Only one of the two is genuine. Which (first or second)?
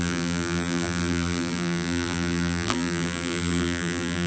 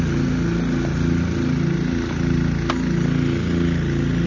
second